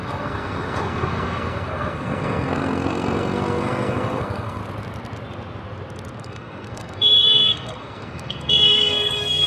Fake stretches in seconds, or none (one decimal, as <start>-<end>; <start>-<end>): 0.0-4.6; 6.2-9.5